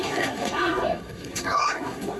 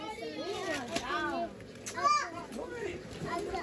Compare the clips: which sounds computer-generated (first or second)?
first